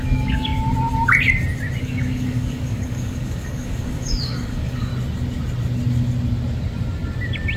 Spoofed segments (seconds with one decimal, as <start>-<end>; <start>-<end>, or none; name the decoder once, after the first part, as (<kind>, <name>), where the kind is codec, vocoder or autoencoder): 0.0-0.5 (codec, DAC); 1.8-4.9